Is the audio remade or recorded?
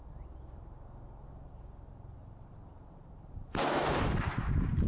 remade